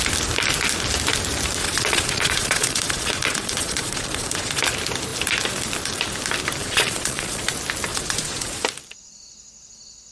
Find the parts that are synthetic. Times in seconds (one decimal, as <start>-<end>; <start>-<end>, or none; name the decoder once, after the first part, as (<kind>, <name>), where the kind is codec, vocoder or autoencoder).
1.6-4.6 (vocoder, Vocos); 6.6-7.4; 7.9-8.6